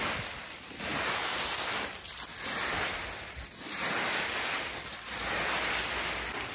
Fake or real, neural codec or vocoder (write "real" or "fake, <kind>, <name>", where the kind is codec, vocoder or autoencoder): real